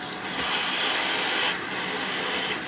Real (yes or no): yes